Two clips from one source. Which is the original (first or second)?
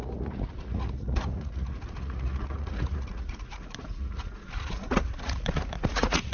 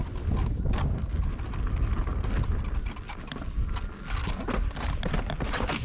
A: second